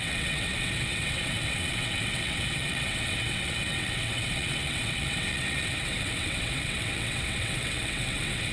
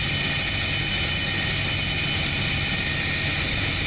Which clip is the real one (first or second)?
second